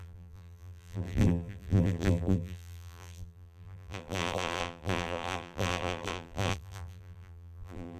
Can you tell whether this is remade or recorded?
remade